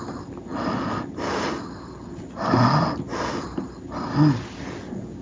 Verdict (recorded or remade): recorded